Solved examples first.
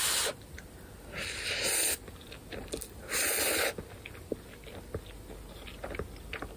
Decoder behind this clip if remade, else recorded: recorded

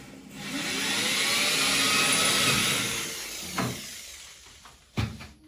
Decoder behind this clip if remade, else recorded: recorded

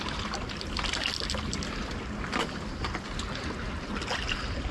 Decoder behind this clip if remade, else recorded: recorded